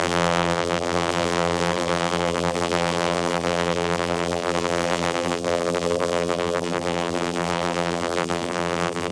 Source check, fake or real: fake